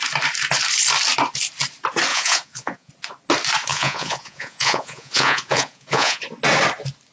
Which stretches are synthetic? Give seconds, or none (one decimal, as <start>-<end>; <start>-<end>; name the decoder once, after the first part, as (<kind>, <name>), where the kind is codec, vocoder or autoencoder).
2.1-2.9 (vocoder, Vocos); 3.7-6.2